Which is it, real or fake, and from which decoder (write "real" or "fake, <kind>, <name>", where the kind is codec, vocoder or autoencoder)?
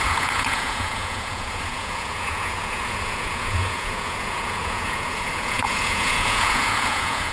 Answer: fake, vocoder, Vocos